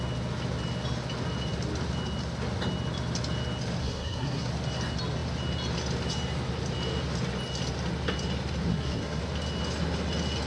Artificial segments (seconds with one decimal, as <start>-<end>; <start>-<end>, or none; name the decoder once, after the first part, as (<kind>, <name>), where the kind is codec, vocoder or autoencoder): 3.8-4.5 (codec, SNAC); 8.7-9.2